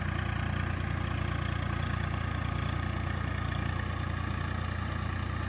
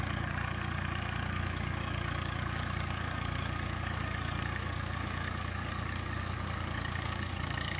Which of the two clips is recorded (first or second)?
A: first